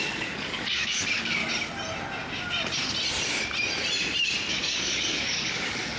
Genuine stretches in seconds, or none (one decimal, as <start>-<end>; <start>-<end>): 1.4-4.5